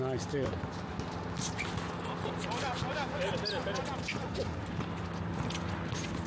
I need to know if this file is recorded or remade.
recorded